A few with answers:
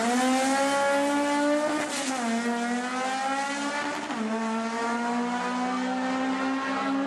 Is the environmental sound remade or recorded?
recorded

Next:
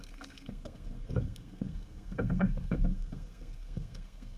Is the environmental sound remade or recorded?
remade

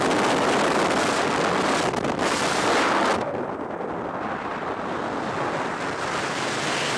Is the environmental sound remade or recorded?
recorded